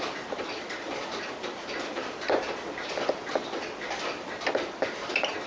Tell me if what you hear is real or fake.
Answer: real